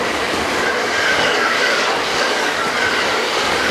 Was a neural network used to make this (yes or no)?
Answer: yes